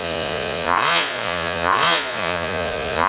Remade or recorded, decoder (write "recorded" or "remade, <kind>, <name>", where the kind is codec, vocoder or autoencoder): remade, vocoder, Vocos